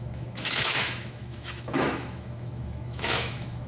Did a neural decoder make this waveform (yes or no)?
yes